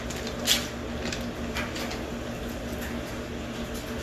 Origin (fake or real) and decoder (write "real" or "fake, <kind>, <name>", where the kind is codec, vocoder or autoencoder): real